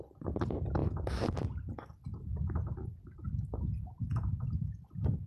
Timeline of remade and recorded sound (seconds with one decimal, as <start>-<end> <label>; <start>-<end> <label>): 0.0-5.3 recorded